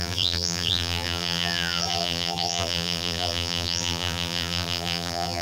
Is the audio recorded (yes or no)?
no